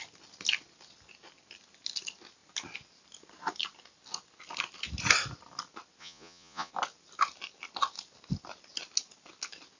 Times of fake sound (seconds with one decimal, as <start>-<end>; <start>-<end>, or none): 6.0-6.7